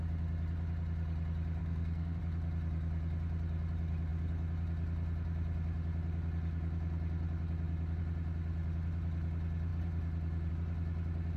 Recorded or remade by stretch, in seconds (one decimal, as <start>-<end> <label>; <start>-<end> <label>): 0.0-1.6 recorded; 1.6-2.2 remade; 2.2-11.4 recorded